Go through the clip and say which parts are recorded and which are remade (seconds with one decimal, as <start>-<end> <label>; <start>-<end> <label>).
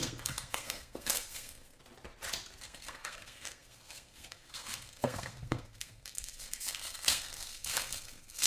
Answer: 0.0-1.8 remade; 1.8-2.6 recorded; 2.6-8.5 remade